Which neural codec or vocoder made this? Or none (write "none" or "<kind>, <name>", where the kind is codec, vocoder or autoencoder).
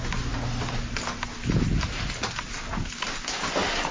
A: none